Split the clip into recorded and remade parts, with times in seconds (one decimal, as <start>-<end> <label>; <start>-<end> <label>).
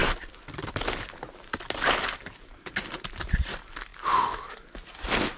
0.0-5.4 remade